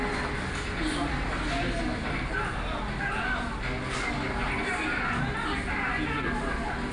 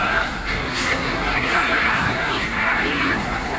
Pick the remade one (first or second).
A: second